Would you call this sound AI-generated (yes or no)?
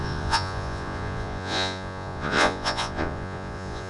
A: yes